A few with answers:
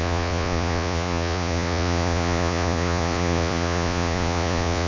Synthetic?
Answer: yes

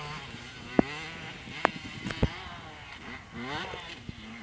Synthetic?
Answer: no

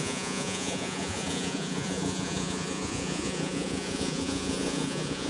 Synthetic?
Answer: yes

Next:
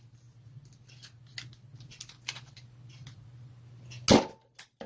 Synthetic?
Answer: no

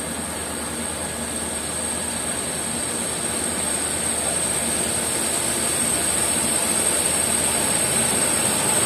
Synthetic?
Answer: no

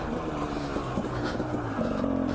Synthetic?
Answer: no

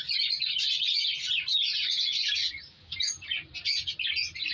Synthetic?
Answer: no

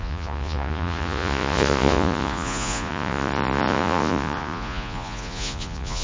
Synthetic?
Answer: yes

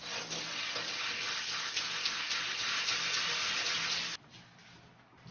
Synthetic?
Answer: no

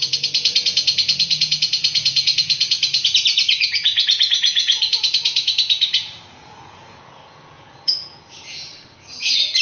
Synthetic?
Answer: yes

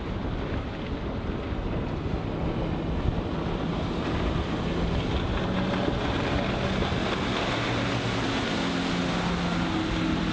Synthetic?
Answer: no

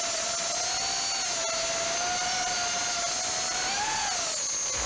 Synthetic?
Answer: no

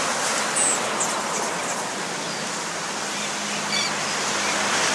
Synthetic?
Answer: no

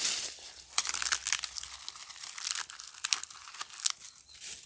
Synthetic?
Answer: no